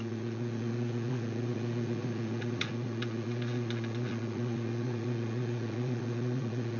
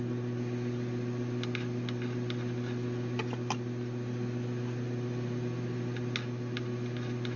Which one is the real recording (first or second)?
second